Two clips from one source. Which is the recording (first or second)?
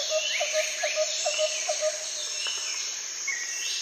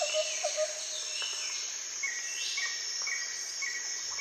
second